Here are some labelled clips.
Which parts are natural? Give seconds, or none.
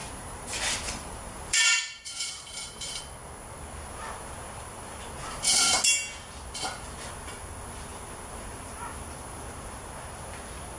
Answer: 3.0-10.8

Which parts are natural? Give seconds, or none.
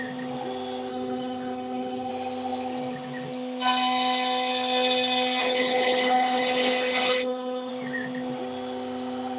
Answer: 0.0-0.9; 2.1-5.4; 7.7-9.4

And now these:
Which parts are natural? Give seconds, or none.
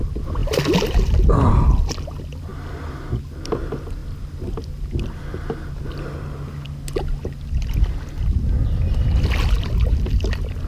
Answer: 0.0-10.7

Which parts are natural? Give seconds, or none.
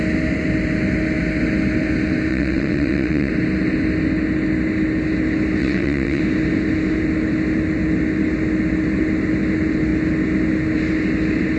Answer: 0.0-2.3; 3.3-5.6; 6.2-11.6